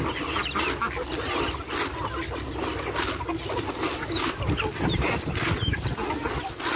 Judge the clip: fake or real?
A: real